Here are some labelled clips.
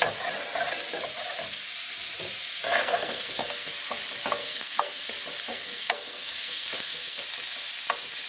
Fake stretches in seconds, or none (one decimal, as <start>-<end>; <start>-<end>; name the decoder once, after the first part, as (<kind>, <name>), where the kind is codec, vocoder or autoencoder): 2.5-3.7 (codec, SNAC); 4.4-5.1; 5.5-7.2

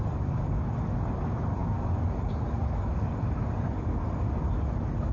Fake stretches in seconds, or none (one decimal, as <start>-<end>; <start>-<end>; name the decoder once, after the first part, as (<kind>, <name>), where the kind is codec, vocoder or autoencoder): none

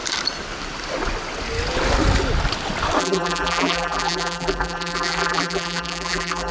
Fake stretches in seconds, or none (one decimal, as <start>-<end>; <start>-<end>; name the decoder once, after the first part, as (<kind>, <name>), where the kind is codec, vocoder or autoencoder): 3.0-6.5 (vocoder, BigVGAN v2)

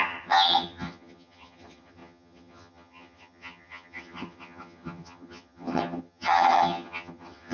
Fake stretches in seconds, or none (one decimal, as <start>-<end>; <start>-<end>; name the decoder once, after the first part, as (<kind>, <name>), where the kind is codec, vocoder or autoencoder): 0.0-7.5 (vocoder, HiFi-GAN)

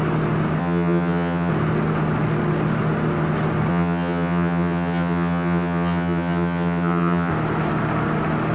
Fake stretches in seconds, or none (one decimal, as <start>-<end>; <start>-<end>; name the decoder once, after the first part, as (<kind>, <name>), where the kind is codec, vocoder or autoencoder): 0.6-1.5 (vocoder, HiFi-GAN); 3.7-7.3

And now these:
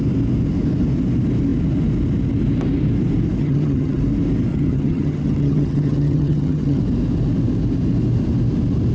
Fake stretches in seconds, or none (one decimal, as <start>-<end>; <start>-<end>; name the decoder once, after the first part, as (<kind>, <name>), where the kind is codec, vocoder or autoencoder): 3.4-4.0 (vocoder, HiFi-GAN); 4.5-6.8

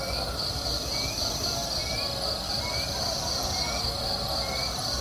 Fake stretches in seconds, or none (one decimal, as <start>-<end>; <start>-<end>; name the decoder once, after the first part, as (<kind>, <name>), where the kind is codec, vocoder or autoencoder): none

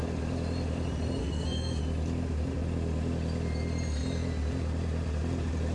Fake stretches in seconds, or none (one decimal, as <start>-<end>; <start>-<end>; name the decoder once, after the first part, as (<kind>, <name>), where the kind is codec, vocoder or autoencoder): 1.2-1.8 (codec, SNAC)